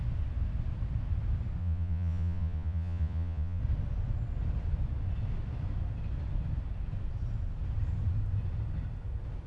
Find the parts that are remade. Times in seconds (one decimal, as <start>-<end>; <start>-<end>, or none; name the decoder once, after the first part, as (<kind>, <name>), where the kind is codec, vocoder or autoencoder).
1.6-3.6 (vocoder, Vocos)